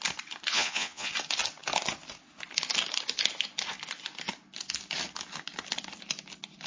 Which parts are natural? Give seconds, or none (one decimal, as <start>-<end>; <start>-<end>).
0.0-0.5; 1.1-6.7